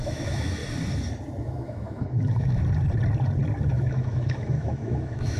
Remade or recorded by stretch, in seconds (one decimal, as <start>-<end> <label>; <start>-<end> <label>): 0.0-0.6 remade; 0.6-1.4 recorded; 1.4-2.6 remade; 2.6-3.7 recorded; 3.7-5.4 remade